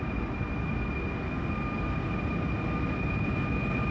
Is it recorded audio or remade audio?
recorded